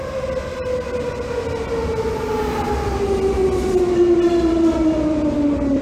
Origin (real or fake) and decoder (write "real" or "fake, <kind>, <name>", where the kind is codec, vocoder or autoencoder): real